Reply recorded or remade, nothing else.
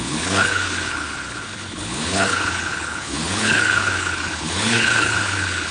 remade